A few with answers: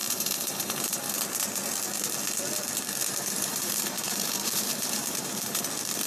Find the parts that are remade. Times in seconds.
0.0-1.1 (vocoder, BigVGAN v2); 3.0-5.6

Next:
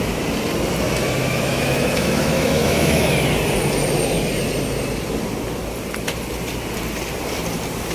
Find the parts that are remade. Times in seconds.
1.2-3.1 (autoencoder, DAC-VAE)

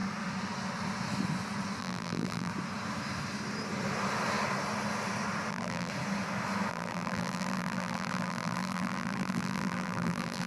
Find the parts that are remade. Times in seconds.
1.8-2.5 (vocoder, BigVGAN v2); 5.5-5.9; 6.7-10.5

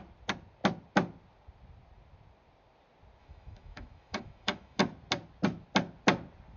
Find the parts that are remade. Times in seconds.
3.2-4.8 (autoencoder, DAC-VAE)

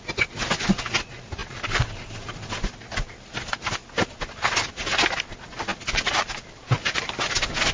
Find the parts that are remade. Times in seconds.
none

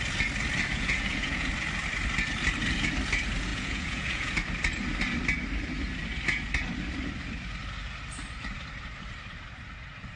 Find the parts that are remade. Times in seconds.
0.7-1.5 (vocoder, Vocos); 3.5-4.3

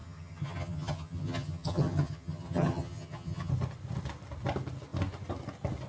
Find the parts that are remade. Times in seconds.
0.0-3.5 (vocoder, HiFi-GAN)